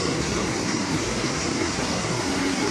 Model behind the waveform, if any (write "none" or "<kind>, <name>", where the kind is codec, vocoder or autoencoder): codec, SNAC